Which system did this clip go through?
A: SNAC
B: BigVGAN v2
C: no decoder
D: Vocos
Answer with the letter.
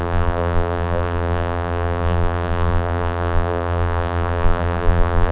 B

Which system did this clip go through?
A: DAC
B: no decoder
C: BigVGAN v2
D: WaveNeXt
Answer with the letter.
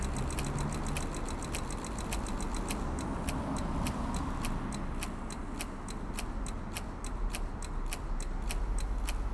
B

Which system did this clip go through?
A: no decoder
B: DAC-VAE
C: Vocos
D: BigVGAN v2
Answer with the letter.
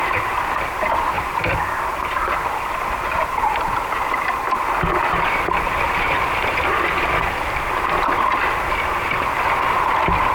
A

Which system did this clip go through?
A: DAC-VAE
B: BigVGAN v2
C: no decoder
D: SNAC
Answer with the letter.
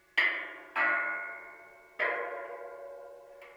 C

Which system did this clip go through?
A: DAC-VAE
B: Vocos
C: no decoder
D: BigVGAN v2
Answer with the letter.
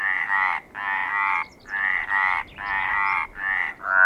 C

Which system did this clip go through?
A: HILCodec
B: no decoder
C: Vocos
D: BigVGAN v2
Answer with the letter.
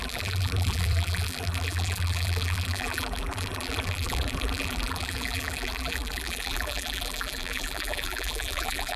D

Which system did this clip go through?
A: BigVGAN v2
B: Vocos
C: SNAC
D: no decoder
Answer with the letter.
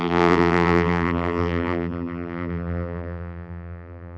A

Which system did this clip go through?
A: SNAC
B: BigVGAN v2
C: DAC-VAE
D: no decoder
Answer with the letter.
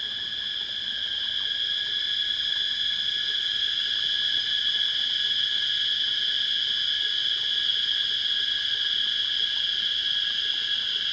D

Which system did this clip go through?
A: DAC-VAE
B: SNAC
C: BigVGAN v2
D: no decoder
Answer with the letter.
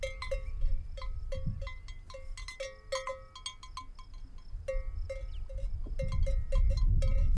D